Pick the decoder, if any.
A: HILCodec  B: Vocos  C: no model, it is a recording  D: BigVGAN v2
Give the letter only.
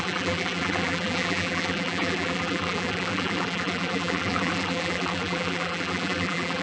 D